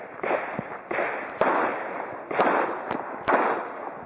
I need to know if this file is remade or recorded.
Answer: recorded